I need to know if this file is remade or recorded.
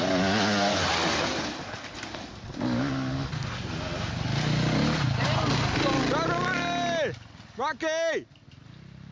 recorded